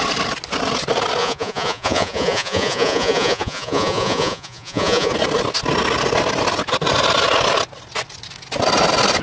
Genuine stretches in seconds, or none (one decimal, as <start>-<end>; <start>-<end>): 0.0-1.2; 5.1-9.2